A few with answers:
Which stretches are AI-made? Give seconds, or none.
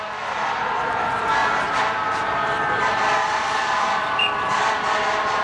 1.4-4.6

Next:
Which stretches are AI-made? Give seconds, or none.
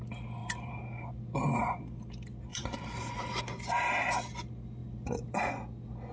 0.4-1.1; 2.5-3.4; 4.8-5.4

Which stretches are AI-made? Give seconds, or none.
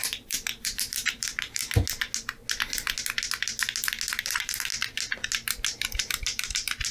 0.0-1.6; 4.2-4.7; 6.0-6.9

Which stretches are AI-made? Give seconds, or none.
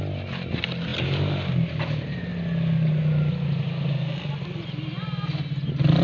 none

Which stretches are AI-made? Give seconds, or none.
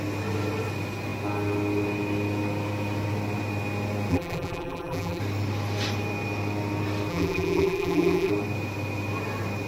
4.1-5.2; 7.1-8.3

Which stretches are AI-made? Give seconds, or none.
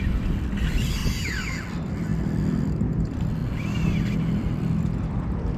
0.0-1.0; 1.7-3.4; 4.0-5.6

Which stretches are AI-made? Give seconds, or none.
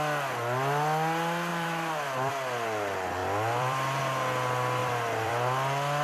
1.5-2.3; 3.2-4.0; 4.8-5.3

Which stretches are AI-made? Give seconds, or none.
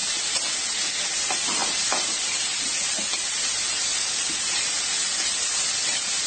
none